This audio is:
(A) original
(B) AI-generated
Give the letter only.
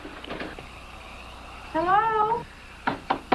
A